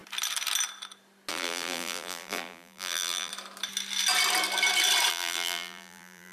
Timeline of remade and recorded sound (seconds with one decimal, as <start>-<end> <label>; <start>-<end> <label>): 0.0-1.3 recorded; 1.3-3.3 remade; 3.3-5.1 recorded; 5.1-6.3 remade